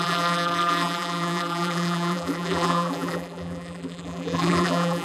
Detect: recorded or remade remade